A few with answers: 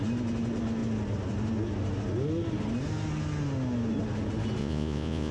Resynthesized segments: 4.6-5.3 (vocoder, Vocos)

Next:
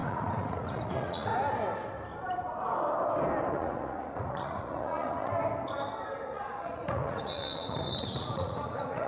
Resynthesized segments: 0.0-1.3 (vocoder, Vocos); 3.5-5.3; 6.3-9.1

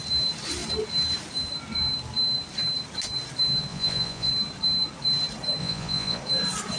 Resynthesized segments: 3.7-4.3 (vocoder, Vocos); 5.6-6.2

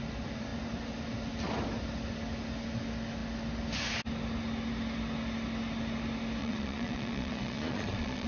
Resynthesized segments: 6.4-8.3 (vocoder, Vocos)

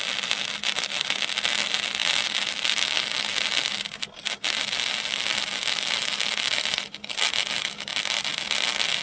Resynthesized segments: none

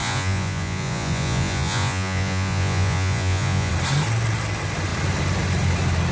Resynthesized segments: 0.0-3.7 (vocoder, Vocos)

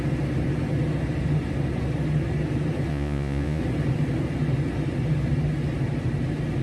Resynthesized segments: 2.9-3.6 (vocoder, Vocos)

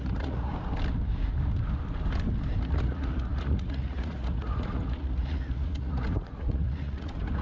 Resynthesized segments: 0.0-0.5 (vocoder, Vocos); 2.7-7.4